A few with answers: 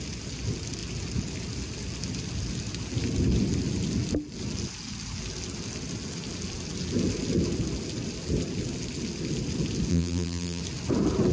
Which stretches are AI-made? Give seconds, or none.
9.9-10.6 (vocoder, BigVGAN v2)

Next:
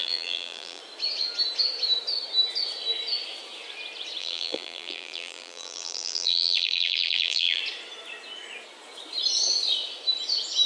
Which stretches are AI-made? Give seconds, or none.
0.0-0.8 (vocoder, BigVGAN v2); 4.2-7.6

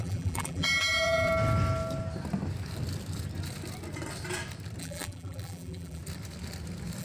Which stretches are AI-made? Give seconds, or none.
0.0-1.3 (vocoder, BigVGAN v2); 4.8-6.0

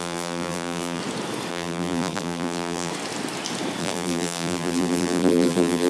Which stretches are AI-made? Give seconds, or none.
0.0-1.0 (vocoder, BigVGAN v2); 1.5-2.9; 3.8-5.9